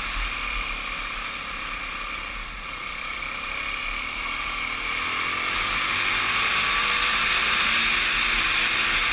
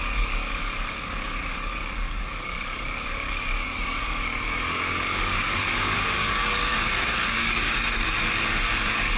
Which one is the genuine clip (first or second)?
first